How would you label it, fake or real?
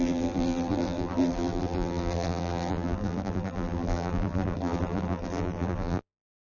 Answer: fake